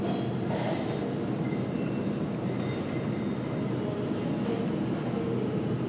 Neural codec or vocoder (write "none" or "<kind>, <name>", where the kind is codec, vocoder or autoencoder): none